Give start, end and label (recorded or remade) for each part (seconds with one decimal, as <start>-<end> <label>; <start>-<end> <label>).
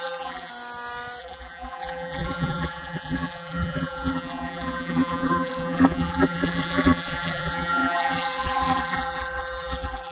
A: 0.0-0.5 remade; 0.5-1.2 recorded; 1.2-10.1 remade